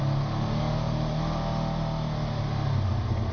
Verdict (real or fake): real